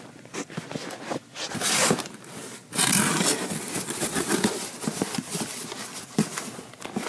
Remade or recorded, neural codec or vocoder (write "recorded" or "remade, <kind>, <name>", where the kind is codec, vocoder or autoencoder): recorded